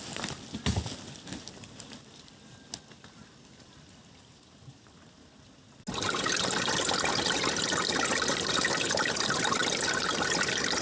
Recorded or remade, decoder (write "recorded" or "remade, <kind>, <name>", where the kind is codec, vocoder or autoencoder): recorded